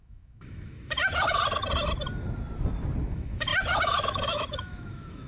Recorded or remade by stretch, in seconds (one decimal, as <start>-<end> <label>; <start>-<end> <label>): 0.0-1.4 remade; 1.4-3.1 recorded; 3.1-5.3 remade